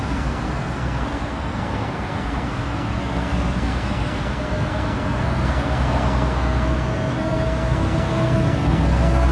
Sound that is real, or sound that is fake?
fake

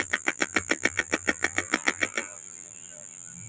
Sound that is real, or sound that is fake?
fake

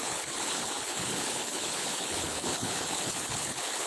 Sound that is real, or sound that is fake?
fake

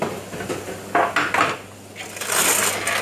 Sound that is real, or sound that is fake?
real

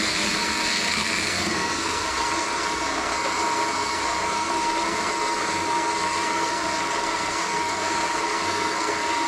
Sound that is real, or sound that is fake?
fake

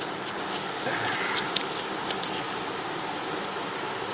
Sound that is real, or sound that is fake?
real